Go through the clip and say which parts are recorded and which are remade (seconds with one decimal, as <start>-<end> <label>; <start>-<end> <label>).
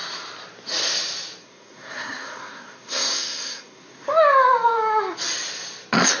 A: 0.0-1.4 recorded; 1.4-4.1 remade; 4.1-6.2 recorded